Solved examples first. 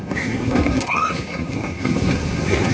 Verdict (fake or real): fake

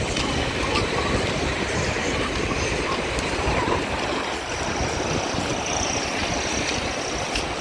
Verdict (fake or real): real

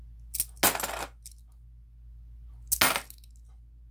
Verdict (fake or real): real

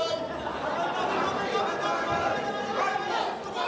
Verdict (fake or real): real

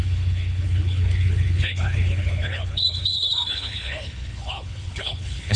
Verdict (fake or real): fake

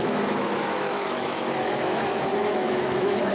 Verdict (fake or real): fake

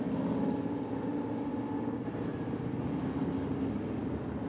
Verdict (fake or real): real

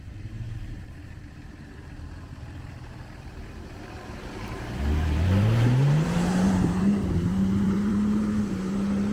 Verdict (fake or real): fake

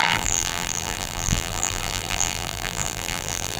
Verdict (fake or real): fake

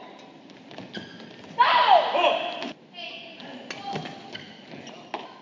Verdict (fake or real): real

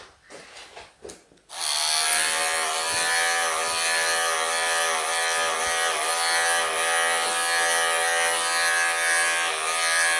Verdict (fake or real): real